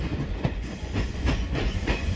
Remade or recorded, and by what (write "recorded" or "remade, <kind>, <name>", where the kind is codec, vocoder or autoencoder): remade, vocoder, Vocos